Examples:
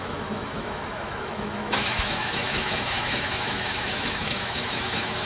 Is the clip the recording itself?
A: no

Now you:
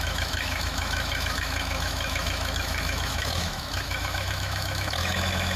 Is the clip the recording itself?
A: no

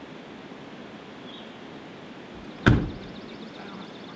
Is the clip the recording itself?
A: yes